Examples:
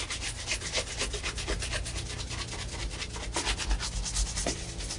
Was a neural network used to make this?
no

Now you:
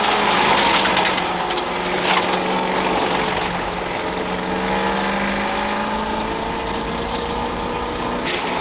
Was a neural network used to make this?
no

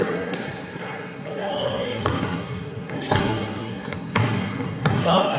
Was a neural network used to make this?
yes